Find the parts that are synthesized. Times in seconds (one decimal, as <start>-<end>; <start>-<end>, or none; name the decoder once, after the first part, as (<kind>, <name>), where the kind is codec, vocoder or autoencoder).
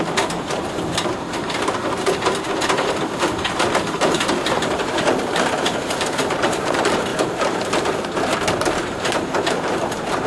0.0-10.3 (vocoder, BigVGAN v2)